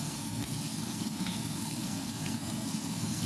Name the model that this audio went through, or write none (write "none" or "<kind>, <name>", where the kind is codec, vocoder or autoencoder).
codec, SNAC